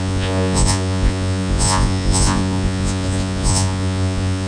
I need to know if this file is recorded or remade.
remade